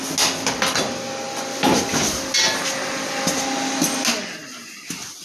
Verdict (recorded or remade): recorded